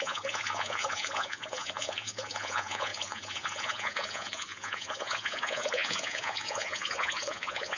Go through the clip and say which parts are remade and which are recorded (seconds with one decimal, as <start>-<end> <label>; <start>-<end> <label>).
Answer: 0.0-7.8 remade